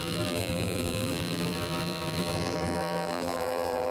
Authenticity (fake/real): fake